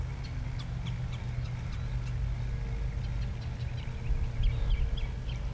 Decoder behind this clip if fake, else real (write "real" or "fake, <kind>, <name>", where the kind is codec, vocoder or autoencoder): real